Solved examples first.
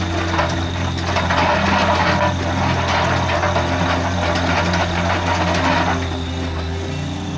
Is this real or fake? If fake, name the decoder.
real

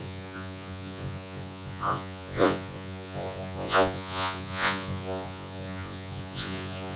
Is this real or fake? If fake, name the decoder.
fake, vocoder, Vocos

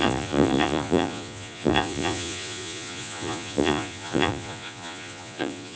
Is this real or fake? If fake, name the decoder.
fake, vocoder, Vocos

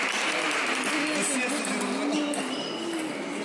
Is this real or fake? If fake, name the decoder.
real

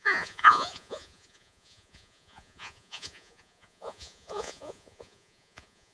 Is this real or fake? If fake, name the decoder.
fake, vocoder, Vocos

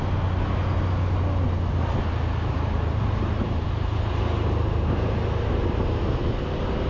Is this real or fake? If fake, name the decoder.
real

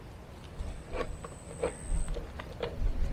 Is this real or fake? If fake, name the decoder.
real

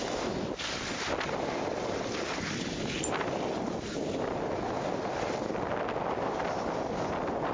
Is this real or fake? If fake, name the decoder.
real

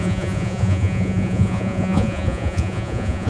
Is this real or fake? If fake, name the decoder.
fake, vocoder, Vocos